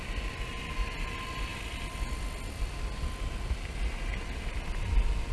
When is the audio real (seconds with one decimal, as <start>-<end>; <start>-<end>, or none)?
0.0-5.3